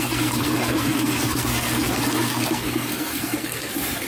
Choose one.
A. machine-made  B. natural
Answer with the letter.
A